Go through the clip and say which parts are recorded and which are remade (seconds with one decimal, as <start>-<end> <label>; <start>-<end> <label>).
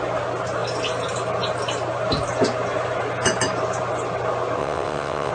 0.0-4.6 recorded; 4.6-5.3 remade